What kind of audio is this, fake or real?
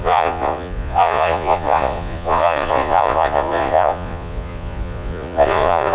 fake